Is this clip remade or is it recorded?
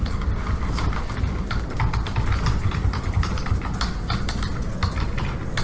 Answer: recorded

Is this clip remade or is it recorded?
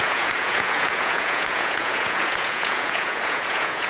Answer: remade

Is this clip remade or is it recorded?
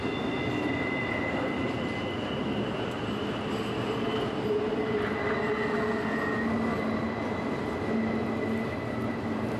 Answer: recorded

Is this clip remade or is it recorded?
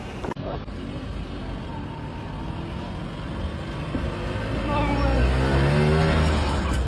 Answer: recorded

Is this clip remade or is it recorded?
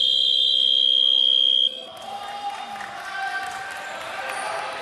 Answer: recorded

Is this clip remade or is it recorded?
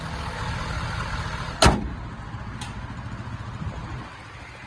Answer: recorded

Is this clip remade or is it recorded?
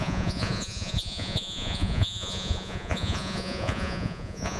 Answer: remade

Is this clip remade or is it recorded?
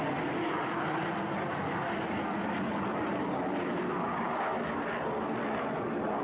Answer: recorded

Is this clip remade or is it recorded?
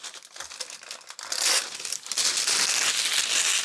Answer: recorded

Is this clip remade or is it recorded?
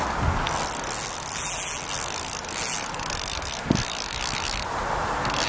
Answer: recorded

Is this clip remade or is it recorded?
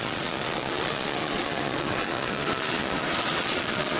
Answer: remade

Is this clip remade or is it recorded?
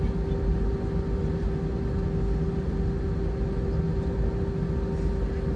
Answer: recorded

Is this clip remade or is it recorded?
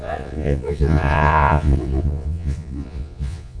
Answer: remade